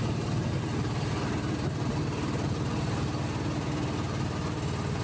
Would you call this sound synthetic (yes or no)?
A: no